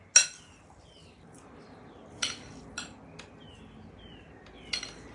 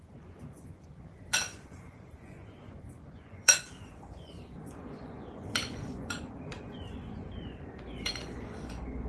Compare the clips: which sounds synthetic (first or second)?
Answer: second